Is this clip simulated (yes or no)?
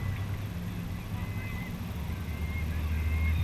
no